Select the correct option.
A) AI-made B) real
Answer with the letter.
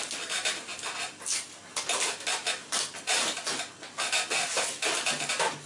B